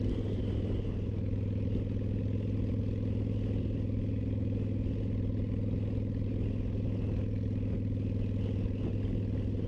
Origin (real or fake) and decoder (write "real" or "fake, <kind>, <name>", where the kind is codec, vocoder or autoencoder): real